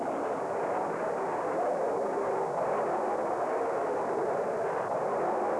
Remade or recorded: recorded